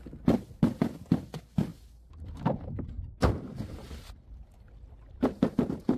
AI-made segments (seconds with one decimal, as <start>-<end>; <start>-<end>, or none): 1.7-2.9